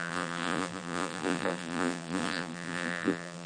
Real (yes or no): no